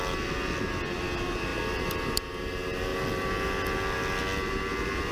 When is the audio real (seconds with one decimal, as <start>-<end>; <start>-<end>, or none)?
0.0-5.1